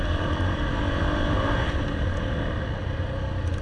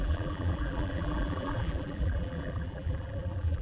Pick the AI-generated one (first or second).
second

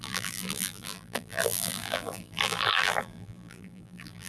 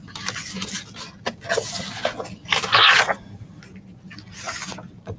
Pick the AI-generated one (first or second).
first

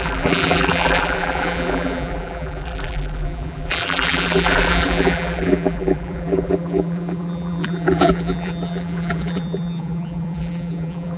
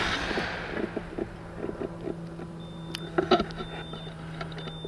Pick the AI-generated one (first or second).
first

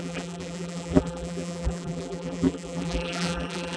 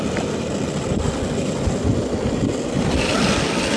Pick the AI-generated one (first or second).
first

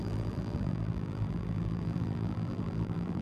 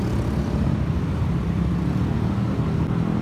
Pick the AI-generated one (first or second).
first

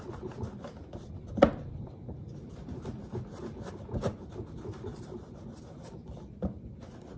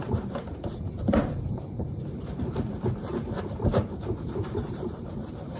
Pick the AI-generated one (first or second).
second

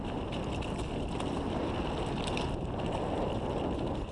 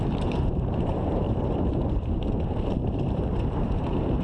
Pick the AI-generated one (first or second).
second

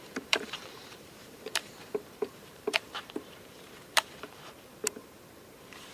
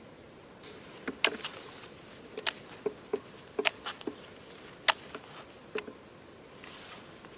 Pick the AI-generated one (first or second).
first